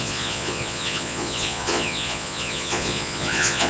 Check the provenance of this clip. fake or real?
fake